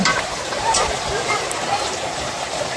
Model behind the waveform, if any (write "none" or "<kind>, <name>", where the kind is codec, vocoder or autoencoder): vocoder, BigVGAN v2